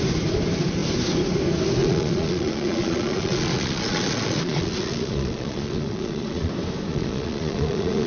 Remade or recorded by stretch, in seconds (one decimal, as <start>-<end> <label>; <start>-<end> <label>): 0.0-1.8 recorded; 1.8-6.5 remade; 6.5-6.9 recorded; 6.9-8.1 remade